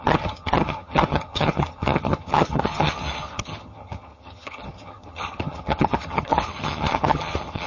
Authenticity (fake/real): fake